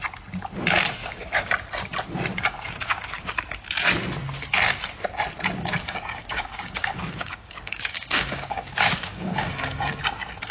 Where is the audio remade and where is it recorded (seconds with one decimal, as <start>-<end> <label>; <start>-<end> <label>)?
0.0-1.0 recorded; 1.0-1.5 remade; 1.5-2.3 recorded; 2.3-3.3 remade; 3.3-5.8 recorded; 5.8-10.0 remade; 10.0-10.5 recorded